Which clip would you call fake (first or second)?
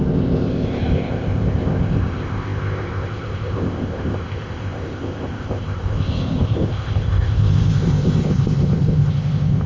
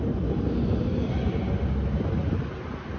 first